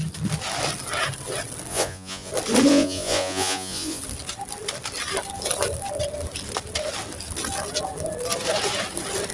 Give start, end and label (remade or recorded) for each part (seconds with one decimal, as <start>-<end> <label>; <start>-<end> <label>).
0.0-1.7 recorded; 1.7-2.3 remade; 2.3-2.7 recorded; 2.7-4.0 remade; 4.0-9.3 recorded

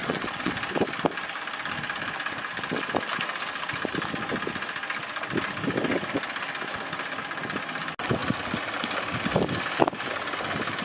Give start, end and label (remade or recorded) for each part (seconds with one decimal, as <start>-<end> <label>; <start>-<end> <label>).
0.0-0.5 remade; 0.5-10.8 recorded

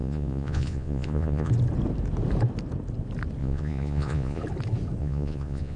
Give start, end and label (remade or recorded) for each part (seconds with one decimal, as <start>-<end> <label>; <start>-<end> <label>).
0.0-1.5 remade; 1.5-3.4 recorded; 3.4-4.4 remade; 4.4-5.0 recorded; 5.0-5.8 remade

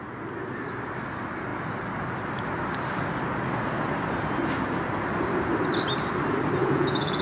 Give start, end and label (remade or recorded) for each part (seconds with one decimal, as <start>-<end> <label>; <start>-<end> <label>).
0.0-6.6 recorded; 6.6-7.2 remade

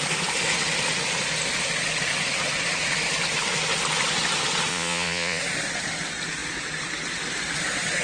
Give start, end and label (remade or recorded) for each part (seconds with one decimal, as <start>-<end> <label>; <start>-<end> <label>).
0.0-4.7 recorded; 4.7-5.4 remade; 5.4-8.0 recorded

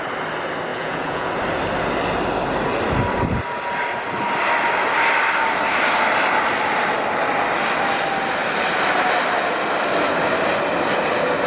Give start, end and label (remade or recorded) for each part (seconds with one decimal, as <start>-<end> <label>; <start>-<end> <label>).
0.0-0.7 recorded; 0.7-1.3 remade; 1.3-11.5 recorded

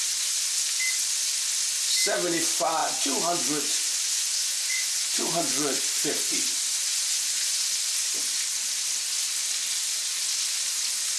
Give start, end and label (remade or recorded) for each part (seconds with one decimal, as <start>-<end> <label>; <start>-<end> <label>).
0.0-2.8 recorded; 2.8-5.8 remade; 5.8-6.9 recorded; 6.9-7.6 remade; 7.6-11.2 recorded